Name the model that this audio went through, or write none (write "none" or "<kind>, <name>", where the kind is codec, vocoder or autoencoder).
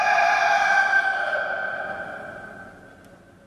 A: none